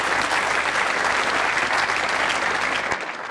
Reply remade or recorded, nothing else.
recorded